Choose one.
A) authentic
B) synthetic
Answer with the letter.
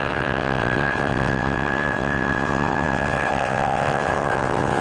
B